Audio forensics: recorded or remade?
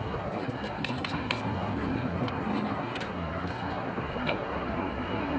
remade